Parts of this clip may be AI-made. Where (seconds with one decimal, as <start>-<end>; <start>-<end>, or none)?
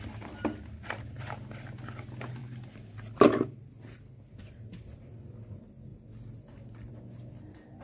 none